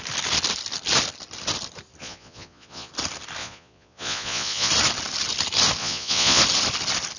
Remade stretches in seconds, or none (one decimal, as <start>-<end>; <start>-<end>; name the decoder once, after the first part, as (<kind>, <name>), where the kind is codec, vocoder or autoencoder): 2.0-2.9 (vocoder, Vocos); 3.4-4.7; 5.8-6.4